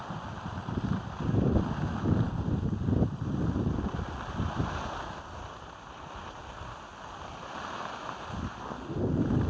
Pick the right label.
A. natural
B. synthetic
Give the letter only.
A